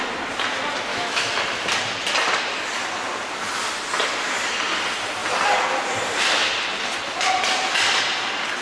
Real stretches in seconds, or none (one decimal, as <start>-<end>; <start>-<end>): 0.0-0.9; 1.4-8.6